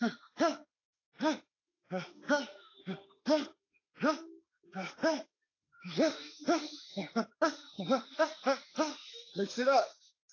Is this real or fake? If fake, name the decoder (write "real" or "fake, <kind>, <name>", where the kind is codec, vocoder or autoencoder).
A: fake, autoencoder, DAC-VAE